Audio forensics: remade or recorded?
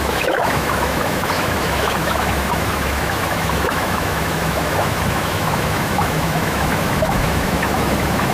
remade